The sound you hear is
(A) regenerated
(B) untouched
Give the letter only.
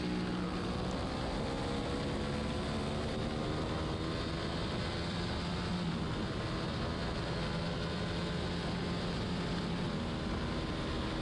B